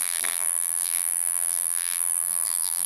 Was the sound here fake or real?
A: fake